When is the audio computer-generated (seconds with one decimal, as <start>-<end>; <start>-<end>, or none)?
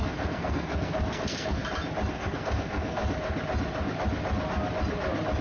0.0-1.6; 2.1-3.0